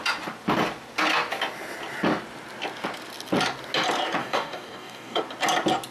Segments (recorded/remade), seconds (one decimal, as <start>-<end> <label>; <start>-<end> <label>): 0.0-4.2 recorded; 4.2-5.2 remade; 5.2-5.9 recorded